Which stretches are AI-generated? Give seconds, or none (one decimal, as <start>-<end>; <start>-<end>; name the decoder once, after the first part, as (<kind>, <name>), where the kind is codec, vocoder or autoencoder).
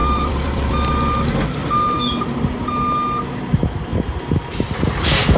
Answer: 0.0-0.9 (vocoder, BigVGAN v2); 1.6-2.4; 3.9-4.5